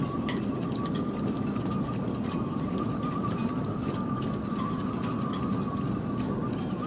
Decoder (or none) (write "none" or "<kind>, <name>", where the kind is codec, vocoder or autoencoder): none